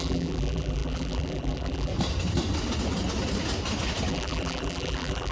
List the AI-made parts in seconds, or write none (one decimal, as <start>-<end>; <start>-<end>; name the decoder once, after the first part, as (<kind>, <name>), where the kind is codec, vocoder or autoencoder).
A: 0.0-1.9 (vocoder, BigVGAN v2); 4.1-5.3